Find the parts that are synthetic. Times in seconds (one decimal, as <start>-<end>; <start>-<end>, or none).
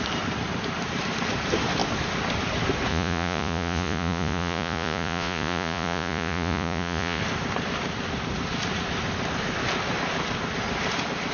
2.9-7.2